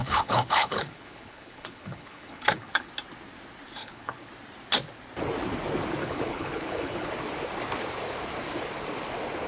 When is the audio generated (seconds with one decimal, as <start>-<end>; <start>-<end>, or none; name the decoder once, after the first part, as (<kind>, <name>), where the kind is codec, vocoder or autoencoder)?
0.0-2.9 (codec, HILCodec); 3.8-4.3; 6.0-7.1